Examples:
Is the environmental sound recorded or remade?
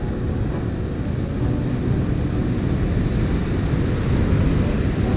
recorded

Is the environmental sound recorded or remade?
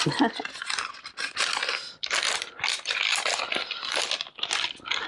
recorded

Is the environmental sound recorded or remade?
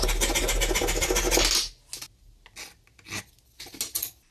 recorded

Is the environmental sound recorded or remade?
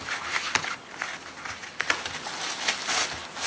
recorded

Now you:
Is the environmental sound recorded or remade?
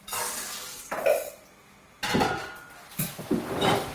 recorded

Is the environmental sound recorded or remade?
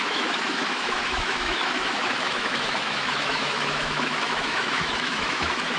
remade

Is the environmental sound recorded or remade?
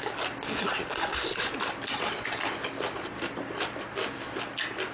recorded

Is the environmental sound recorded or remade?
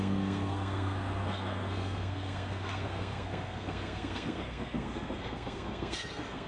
remade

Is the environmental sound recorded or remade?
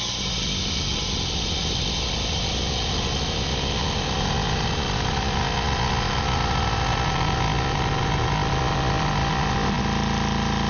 recorded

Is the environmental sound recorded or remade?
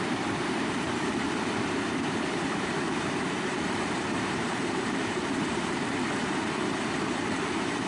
remade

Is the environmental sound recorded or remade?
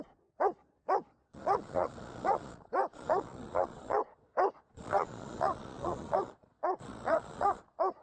remade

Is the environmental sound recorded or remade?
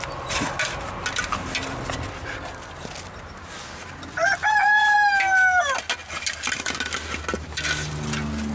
recorded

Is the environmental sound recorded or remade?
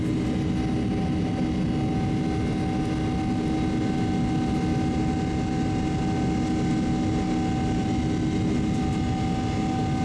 recorded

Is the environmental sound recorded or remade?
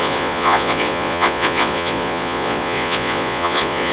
remade